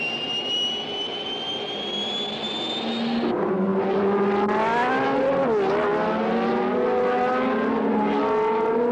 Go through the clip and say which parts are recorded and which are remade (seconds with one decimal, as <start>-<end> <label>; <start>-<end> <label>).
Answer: 0.0-8.9 recorded